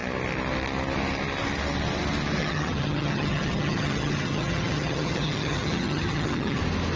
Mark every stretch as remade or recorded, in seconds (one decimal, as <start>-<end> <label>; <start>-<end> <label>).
0.0-2.4 recorded; 2.4-6.6 remade; 6.6-7.0 recorded

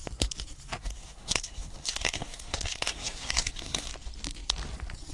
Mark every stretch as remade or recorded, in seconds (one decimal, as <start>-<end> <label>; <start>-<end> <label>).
0.0-0.8 recorded; 0.8-3.9 remade; 3.9-5.1 recorded